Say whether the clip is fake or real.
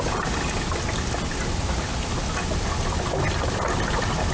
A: real